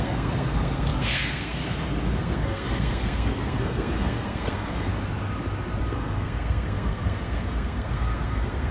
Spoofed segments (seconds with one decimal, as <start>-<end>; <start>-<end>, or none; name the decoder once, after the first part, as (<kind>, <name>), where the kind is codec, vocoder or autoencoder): 0.0-4.9 (codec, SNAC); 5.8-8.7